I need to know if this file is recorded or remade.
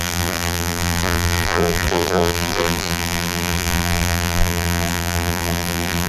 remade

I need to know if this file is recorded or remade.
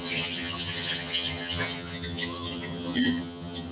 remade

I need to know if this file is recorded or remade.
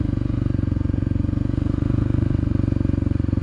remade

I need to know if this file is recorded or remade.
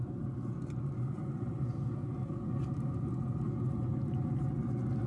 recorded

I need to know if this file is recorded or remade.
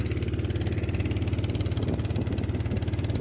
recorded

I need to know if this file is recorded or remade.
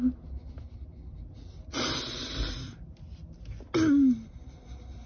recorded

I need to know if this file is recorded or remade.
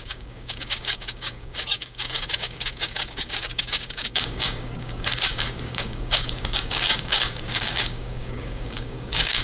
remade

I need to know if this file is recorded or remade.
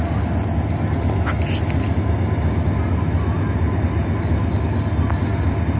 recorded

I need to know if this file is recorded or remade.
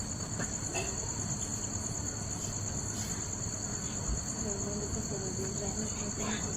recorded